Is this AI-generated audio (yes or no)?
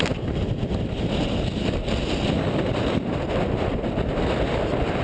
no